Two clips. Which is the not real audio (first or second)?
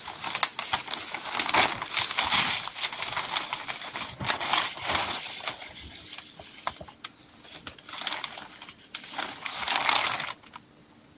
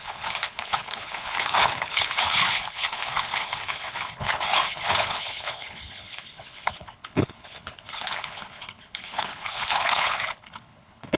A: second